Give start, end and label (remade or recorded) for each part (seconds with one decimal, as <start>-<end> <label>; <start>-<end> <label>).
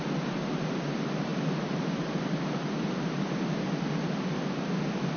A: 0.0-5.2 recorded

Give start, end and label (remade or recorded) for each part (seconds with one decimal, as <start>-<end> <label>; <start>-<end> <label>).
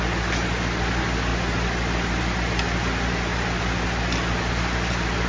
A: 0.0-5.3 recorded